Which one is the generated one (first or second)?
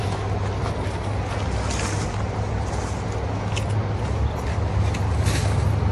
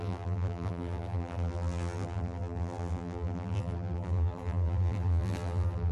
second